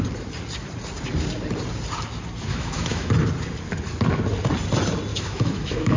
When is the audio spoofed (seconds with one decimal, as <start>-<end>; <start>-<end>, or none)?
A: 2.5-3.1; 5.1-6.0